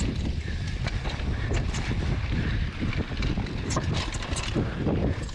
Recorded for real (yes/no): no